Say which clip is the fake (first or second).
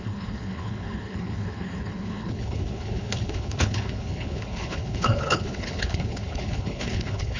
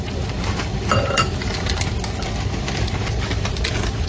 first